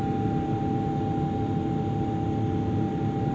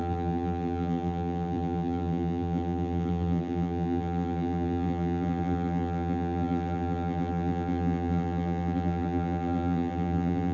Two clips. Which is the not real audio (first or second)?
second